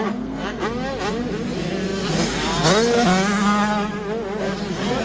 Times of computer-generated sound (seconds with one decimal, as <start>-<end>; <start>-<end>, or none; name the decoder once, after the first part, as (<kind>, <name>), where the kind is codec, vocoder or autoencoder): 0.0-0.6 (codec, SNAC)